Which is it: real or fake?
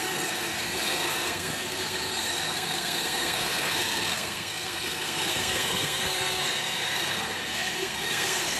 fake